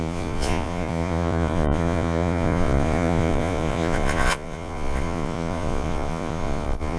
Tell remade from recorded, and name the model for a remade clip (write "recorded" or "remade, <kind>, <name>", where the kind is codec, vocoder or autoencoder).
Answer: remade, vocoder, Vocos